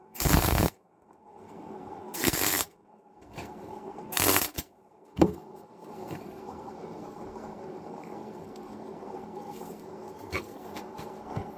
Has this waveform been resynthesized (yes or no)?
yes